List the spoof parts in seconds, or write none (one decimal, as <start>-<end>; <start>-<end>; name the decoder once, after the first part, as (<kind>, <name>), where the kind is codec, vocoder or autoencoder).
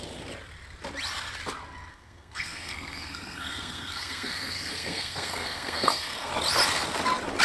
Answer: 1.9-6.3 (codec, SNAC)